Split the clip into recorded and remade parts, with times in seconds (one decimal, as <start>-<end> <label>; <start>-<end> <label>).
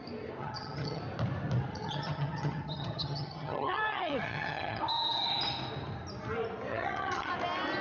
0.0-0.4 recorded; 0.4-1.0 remade; 1.0-1.7 recorded; 1.7-4.8 remade; 4.8-6.7 recorded; 6.7-7.3 remade; 7.3-7.8 recorded